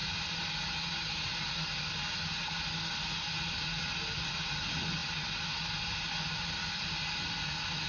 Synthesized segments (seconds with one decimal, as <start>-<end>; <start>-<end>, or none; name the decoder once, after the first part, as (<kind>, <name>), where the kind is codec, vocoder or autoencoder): none